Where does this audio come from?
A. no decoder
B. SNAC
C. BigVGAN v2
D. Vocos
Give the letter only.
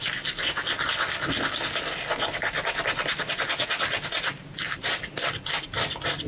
A